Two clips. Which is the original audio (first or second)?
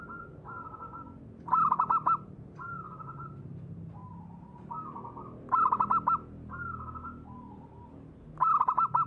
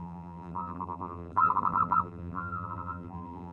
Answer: first